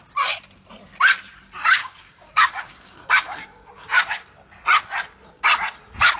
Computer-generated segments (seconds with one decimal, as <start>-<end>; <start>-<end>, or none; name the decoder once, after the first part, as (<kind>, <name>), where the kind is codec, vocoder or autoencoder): 1.8-4.2 (codec, DAC)